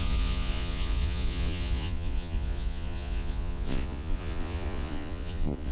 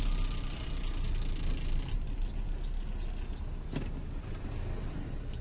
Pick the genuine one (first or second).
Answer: second